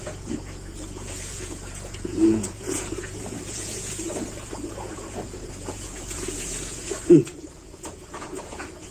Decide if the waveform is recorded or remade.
remade